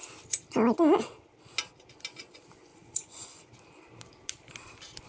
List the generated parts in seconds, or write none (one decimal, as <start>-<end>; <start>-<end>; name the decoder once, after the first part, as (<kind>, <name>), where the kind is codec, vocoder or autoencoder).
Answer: 2.7-3.5 (vocoder, Vocos)